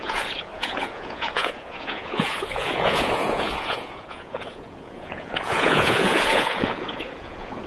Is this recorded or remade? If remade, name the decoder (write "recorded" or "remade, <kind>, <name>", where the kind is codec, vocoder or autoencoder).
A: remade, vocoder, Vocos